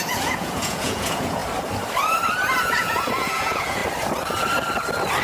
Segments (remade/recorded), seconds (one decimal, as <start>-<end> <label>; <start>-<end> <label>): 0.0-1.4 remade; 1.4-2.6 recorded; 2.6-3.8 remade; 3.8-5.2 recorded